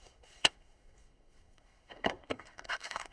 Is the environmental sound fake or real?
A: fake